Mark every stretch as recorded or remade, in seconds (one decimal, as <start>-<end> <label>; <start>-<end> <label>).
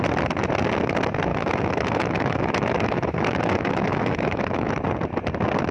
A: 0.0-1.3 recorded; 1.3-4.7 remade; 4.7-5.7 recorded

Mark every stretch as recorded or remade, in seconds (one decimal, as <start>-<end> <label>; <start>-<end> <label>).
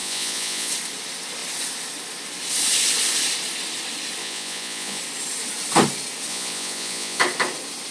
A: 0.0-0.7 remade; 0.7-4.2 recorded; 4.2-5.0 remade; 5.0-6.3 recorded; 6.3-7.2 remade; 7.2-7.9 recorded